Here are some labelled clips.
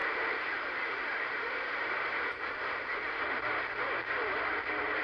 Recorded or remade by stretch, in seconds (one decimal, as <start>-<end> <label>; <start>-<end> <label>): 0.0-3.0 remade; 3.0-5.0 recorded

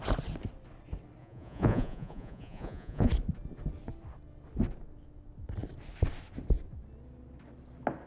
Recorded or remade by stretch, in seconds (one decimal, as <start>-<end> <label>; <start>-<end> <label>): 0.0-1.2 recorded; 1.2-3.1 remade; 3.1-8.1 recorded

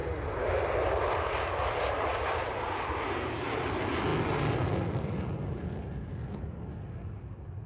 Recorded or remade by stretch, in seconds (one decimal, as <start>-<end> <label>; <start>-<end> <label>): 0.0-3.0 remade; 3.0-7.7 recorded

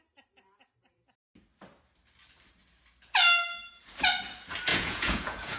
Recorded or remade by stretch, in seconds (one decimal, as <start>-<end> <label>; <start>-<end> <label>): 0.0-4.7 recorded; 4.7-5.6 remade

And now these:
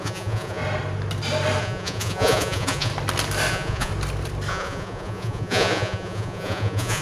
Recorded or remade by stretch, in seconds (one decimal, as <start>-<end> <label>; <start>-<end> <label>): 0.0-0.6 remade; 0.6-1.6 recorded; 1.6-2.9 remade; 2.9-3.5 recorded; 3.5-3.9 remade; 3.9-4.5 recorded; 4.5-7.0 remade